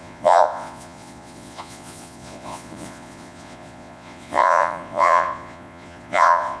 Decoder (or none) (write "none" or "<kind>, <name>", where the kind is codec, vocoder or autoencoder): vocoder, Vocos